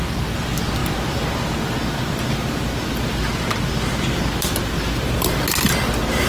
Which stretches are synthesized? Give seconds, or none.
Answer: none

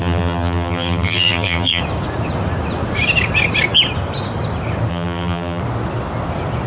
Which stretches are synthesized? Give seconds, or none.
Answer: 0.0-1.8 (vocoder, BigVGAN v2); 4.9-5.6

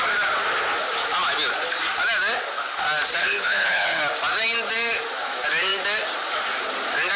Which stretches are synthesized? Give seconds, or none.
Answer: 3.2-4.0 (codec, HILCodec)